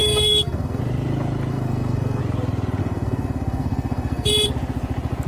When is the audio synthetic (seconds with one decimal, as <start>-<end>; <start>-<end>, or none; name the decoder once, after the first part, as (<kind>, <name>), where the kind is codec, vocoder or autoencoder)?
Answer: 0.0-0.8 (codec, SNAC); 1.5-2.2; 2.8-4.3